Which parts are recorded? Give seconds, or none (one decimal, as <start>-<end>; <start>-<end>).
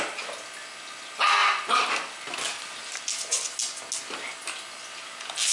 0.0-5.5